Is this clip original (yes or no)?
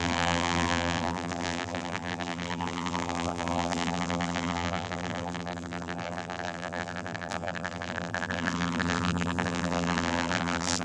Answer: no